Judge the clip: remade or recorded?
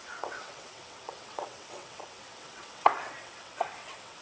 remade